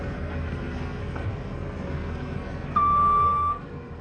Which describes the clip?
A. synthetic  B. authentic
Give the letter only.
A